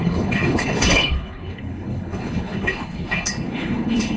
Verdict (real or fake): fake